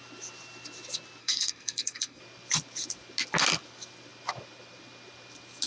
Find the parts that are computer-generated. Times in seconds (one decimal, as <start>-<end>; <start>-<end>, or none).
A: 1.2-2.2